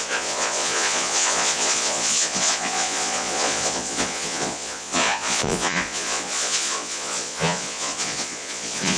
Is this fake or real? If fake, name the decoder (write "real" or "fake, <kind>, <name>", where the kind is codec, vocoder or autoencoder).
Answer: fake, vocoder, Vocos